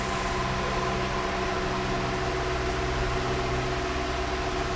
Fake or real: real